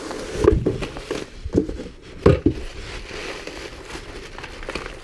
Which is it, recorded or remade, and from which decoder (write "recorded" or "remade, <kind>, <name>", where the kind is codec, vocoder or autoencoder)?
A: recorded